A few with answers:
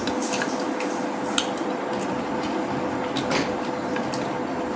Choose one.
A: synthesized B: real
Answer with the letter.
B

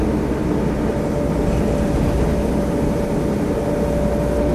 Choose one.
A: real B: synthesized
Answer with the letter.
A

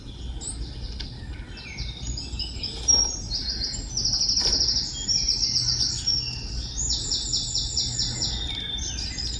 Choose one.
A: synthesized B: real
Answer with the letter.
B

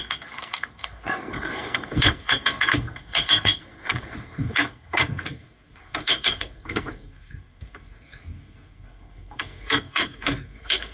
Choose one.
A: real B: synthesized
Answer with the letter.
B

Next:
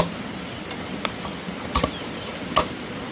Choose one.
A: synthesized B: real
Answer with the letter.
B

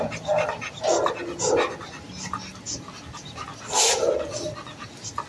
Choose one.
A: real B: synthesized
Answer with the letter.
A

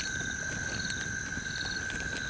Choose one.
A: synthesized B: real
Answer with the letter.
B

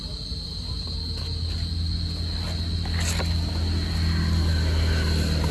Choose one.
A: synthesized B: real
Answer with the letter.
B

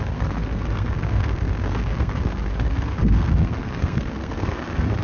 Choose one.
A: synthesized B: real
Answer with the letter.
A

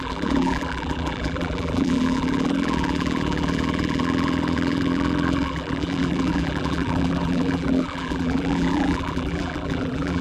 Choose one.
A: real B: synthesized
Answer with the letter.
B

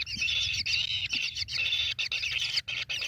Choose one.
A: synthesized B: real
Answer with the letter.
B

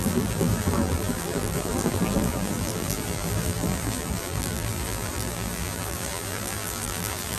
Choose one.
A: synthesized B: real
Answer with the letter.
A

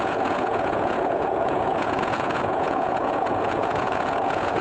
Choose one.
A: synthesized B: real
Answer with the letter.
A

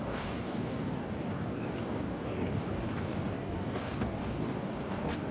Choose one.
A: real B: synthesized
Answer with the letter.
B